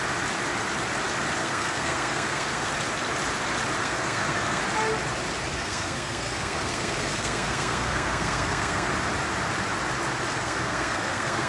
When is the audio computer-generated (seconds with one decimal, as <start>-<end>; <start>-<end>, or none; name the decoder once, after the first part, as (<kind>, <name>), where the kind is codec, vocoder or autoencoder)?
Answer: 1.4-2.7 (codec, SNAC); 3.8-4.6; 5.5-8.9; 10.4-11.5